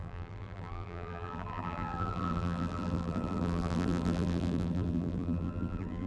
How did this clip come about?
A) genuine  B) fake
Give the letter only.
B